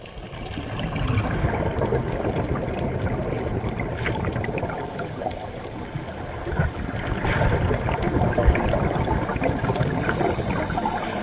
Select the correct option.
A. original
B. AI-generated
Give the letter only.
A